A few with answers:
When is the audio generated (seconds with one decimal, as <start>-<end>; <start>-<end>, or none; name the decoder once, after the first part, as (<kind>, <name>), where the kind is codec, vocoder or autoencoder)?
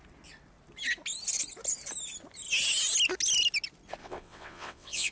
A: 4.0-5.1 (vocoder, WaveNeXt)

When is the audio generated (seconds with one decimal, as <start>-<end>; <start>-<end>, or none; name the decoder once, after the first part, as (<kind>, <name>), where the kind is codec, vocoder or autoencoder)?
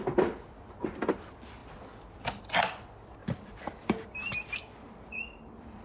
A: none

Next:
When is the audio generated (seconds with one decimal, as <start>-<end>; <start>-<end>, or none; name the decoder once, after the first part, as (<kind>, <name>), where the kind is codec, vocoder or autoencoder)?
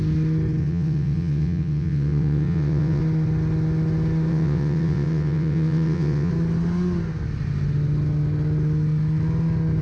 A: 0.6-3.0 (vocoder, WaveNeXt); 4.3-6.3